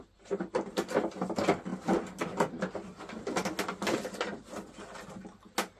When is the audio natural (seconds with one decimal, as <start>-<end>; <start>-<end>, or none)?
0.0-5.8